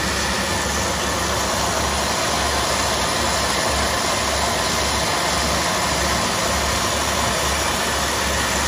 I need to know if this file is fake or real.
real